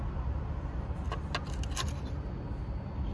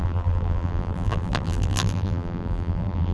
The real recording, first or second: first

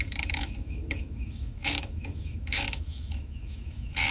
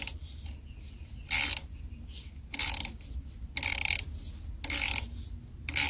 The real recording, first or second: second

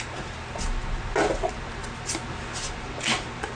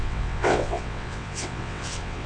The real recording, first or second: first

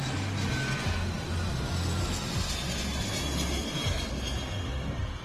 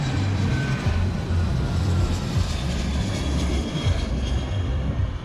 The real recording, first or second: first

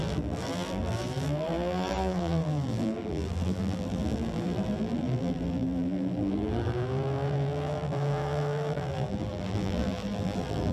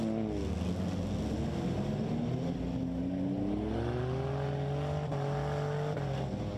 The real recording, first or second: second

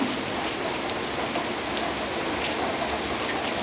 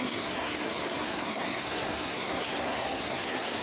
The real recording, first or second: first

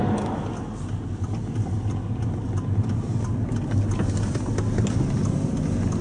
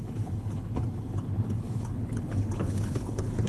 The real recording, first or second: first